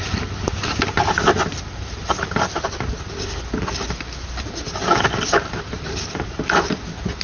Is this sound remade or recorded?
recorded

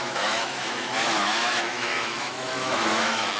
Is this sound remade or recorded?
remade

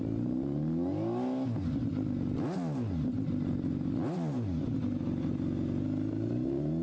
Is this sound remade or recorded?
recorded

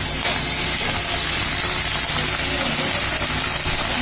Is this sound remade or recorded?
recorded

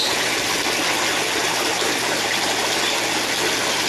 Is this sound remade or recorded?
recorded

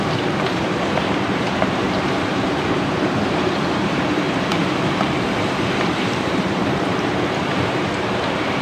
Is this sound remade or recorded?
remade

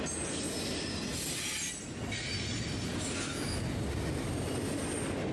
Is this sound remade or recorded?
recorded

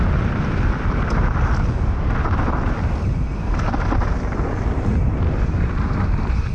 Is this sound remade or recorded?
recorded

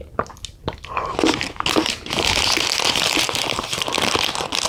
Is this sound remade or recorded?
recorded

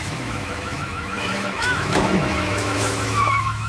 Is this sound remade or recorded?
remade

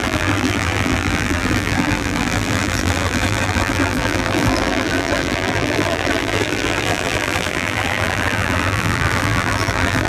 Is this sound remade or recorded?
remade